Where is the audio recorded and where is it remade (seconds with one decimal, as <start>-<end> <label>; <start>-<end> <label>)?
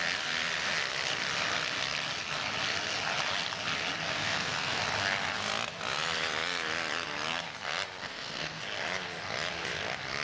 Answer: 0.0-4.1 recorded; 4.1-4.8 remade; 4.8-8.0 recorded; 8.0-8.6 remade; 8.6-10.2 recorded